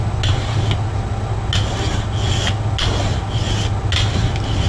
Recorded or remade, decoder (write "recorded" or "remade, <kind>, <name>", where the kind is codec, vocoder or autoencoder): recorded